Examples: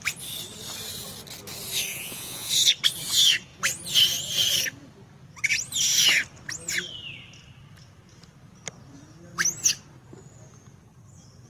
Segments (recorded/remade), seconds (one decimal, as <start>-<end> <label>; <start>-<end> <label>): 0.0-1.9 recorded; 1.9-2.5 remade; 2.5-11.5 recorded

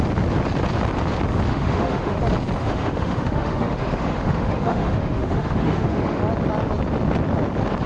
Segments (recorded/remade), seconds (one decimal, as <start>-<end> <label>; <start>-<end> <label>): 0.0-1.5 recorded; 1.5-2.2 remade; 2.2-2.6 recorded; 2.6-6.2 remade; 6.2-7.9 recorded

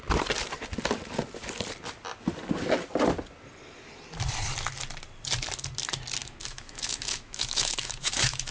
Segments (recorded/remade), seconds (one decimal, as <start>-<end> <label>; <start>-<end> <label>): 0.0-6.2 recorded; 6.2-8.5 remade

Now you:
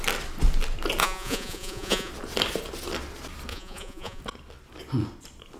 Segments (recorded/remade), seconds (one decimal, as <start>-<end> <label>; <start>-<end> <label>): 0.0-1.0 recorded; 1.0-2.1 remade; 2.1-3.5 recorded; 3.5-4.2 remade; 4.2-5.6 recorded

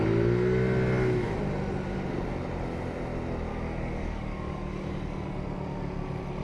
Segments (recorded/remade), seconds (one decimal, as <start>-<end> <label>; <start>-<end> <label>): 0.0-3.5 recorded; 3.5-5.1 remade; 5.1-6.4 recorded